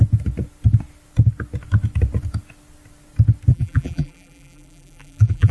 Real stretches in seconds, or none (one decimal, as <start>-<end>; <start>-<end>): 0.0-3.5